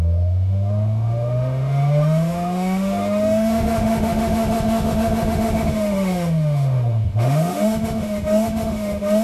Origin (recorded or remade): remade